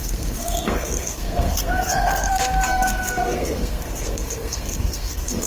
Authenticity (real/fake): fake